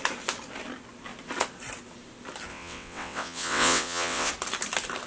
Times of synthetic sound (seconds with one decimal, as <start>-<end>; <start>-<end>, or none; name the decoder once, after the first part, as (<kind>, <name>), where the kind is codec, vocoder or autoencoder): 2.5-4.3 (vocoder, WaveNeXt)